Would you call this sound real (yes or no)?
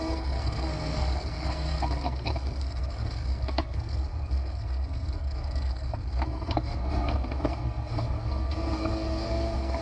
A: no